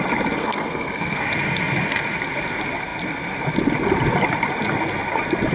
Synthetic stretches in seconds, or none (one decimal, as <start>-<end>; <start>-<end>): 0.4-1.2